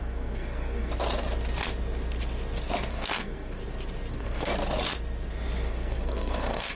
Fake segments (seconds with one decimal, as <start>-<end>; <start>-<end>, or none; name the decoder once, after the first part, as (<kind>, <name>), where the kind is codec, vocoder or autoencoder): 0.0-0.9 (codec, SNAC); 2.9-3.6; 4.1-4.5; 5.7-6.8